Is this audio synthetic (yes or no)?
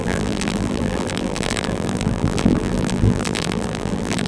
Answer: yes